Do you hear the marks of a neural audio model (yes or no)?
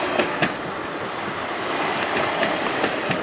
no